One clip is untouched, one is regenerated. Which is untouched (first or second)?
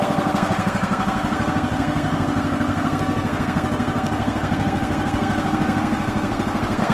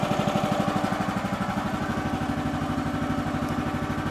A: second